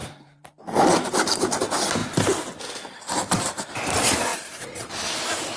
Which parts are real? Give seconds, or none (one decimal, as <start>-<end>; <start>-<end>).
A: 1.6-4.3; 4.9-5.6